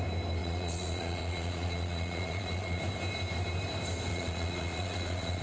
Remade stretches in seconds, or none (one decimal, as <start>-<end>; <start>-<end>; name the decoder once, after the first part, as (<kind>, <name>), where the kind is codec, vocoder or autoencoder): 0.4-2.8 (vocoder, Vocos); 4.1-5.4